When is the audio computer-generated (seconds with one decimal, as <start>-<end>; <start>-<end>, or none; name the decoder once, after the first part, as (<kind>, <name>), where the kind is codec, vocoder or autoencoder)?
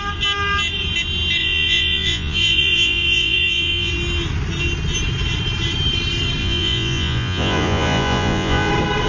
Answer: 1.4-3.9 (vocoder, Vocos); 6.4-8.7